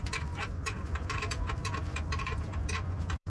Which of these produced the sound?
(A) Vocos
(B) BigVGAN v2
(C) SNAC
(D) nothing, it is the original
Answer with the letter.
A